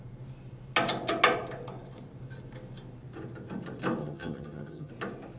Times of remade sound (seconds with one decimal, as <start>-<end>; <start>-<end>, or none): 4.0-4.9